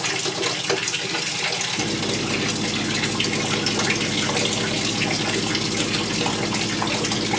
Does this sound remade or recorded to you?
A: recorded